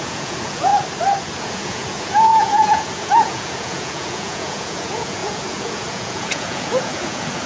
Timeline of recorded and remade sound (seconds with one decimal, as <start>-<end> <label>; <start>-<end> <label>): 0.0-0.7 remade; 0.7-1.4 recorded; 1.4-7.5 remade